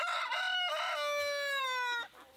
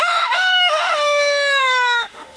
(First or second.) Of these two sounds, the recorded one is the first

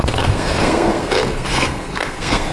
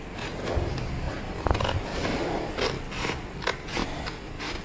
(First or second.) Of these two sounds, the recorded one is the second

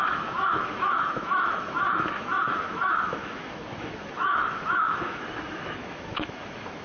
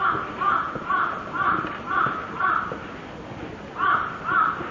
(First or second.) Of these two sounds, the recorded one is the second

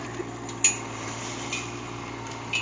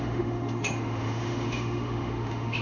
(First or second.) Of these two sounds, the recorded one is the first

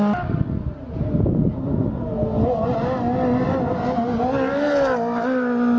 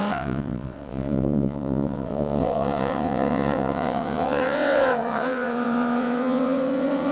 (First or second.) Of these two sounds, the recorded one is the first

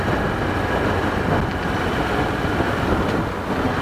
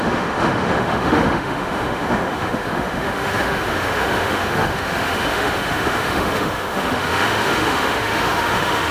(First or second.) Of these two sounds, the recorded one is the first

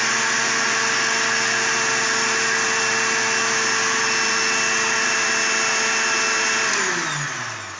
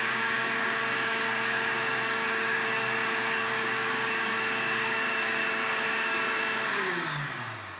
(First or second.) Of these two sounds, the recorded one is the first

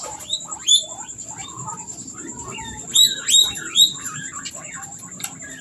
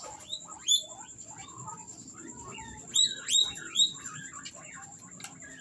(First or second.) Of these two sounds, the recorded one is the second